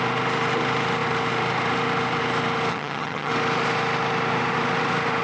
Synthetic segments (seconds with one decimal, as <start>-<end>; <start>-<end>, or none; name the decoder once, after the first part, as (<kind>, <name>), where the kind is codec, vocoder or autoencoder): 2.7-3.3 (vocoder, HiFi-GAN)